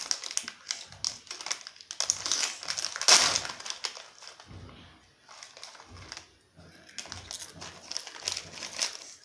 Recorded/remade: recorded